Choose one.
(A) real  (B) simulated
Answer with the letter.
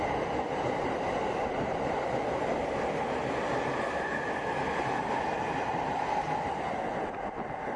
A